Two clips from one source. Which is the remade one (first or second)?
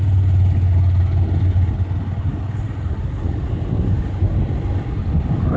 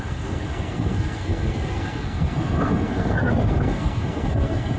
second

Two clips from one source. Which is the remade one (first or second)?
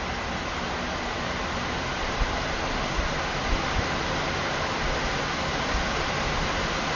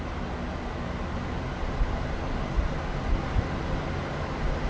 first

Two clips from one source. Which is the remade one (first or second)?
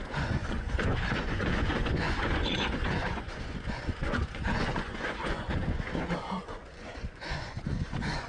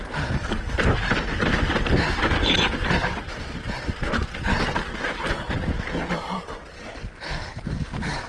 first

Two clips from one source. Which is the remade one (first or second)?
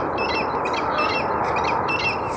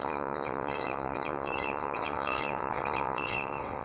second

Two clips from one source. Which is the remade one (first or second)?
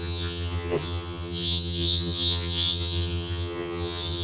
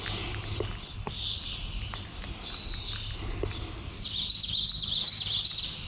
first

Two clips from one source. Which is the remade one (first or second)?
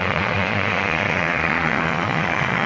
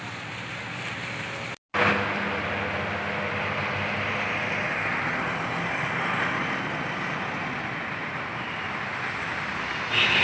first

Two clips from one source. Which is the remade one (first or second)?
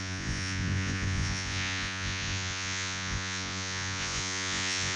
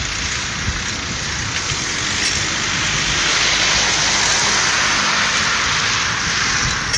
first